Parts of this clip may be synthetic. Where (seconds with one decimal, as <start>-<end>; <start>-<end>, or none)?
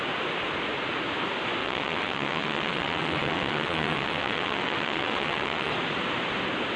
1.6-5.7